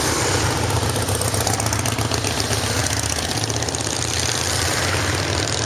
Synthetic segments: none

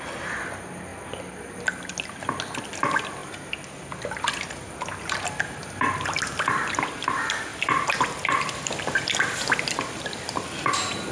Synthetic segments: none

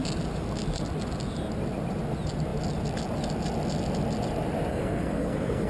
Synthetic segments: 4.7-5.7 (codec, SNAC)

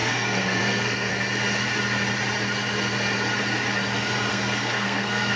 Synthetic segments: 0.0-1.1 (codec, SNAC); 4.3-5.4

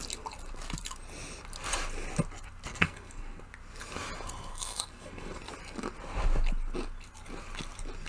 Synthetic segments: 2.7-3.4 (codec, SNAC); 4.5-5.4

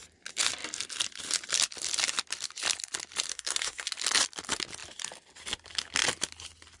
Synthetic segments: 3.3-3.9 (codec, SNAC)